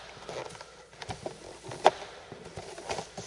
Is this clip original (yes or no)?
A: yes